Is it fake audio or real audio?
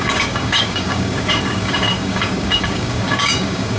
fake